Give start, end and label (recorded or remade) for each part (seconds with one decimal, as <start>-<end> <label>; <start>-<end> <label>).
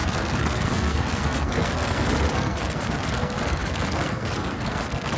0.0-5.2 remade